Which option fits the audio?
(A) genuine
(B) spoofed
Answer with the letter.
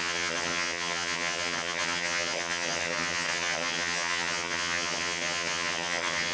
B